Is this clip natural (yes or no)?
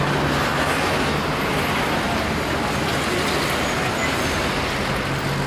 yes